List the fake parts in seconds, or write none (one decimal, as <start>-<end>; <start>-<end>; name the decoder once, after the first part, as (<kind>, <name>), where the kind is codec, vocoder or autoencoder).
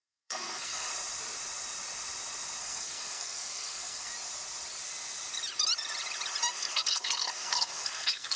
0.0-0.9 (codec, SNAC); 2.6-4.1; 6.5-8.4